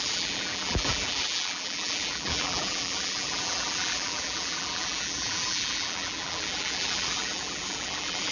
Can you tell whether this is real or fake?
fake